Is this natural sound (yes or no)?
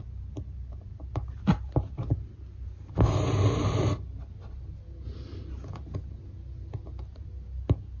yes